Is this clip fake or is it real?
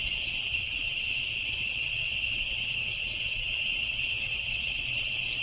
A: fake